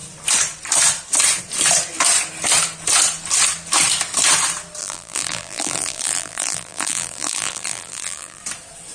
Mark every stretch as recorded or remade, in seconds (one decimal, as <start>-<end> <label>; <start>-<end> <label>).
0.0-4.8 recorded; 4.8-8.4 remade; 8.4-8.9 recorded